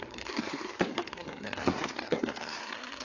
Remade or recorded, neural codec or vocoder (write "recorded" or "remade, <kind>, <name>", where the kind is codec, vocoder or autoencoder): remade, codec, SNAC